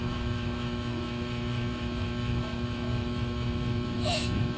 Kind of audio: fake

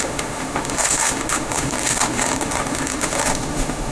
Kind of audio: fake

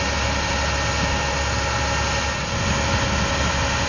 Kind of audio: real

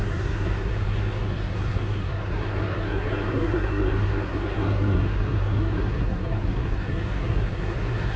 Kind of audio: fake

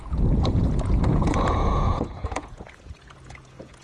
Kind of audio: fake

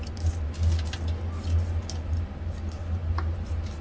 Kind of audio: real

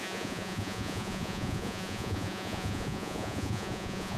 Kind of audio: fake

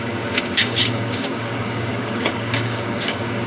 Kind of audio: fake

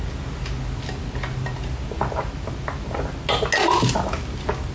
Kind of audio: real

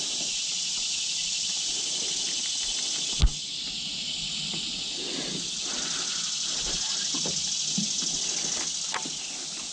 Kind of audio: real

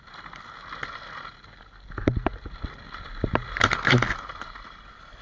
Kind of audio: real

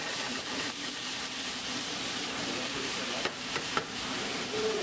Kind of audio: fake